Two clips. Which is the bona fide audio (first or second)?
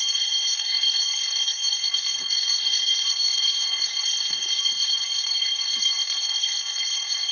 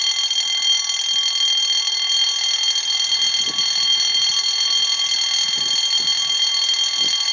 second